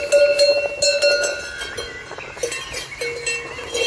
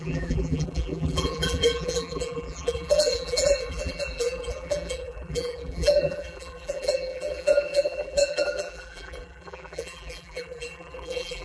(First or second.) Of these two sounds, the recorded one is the first